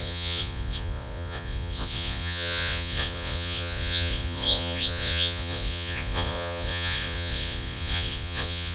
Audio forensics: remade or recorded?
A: remade